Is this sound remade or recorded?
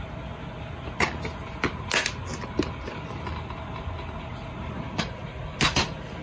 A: recorded